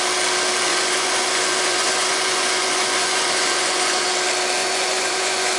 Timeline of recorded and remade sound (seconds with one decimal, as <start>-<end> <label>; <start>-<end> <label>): 0.0-0.7 recorded; 0.7-4.1 remade; 4.1-4.6 recorded; 4.6-5.6 remade